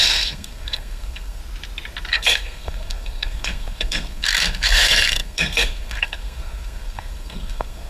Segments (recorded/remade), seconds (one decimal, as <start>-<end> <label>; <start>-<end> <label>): 0.0-1.4 remade; 1.4-2.1 recorded; 2.1-7.9 remade